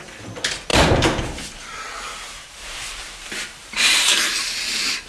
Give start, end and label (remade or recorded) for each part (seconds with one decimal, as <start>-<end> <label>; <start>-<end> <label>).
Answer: 0.0-0.7 recorded; 0.7-3.0 remade; 3.0-3.6 recorded; 3.6-5.1 remade